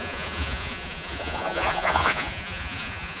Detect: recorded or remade remade